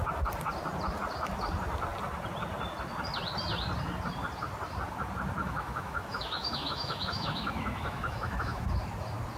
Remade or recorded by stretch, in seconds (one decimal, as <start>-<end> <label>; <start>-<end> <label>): 0.0-5.4 recorded; 5.4-8.6 remade; 8.6-9.4 recorded